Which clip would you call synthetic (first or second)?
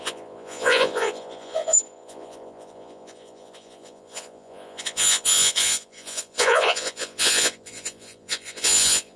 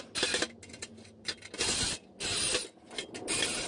first